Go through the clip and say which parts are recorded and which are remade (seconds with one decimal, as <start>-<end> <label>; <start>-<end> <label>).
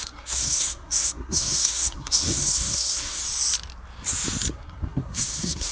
0.0-3.2 remade; 3.2-4.5 recorded; 4.5-5.7 remade